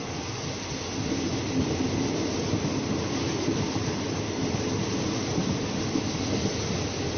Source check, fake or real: real